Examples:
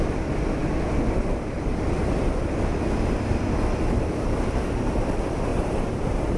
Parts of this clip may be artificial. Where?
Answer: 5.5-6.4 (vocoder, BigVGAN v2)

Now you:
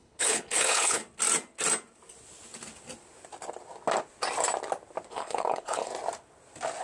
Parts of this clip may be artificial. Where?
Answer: 0.0-1.0 (codec, HILCodec); 5.1-5.9

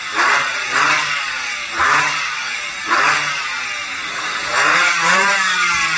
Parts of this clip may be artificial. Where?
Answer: 0.0-3.4 (codec, DAC); 4.1-6.0

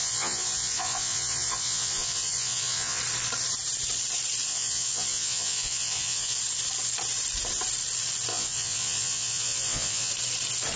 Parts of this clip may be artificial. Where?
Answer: 0.0-3.0 (vocoder, Vocos); 4.5-6.4; 8.3-10.1